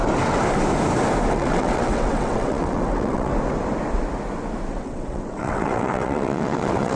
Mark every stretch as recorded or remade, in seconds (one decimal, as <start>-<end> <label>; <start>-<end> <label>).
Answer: 0.0-1.3 recorded; 1.3-3.3 remade; 3.3-4.7 recorded; 4.7-7.0 remade